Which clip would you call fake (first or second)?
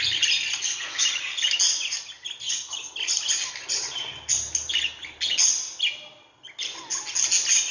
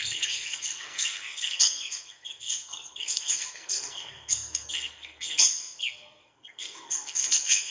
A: second